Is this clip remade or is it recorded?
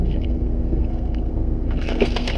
remade